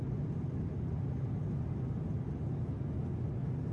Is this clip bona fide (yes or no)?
yes